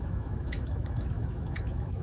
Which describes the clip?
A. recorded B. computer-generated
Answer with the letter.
B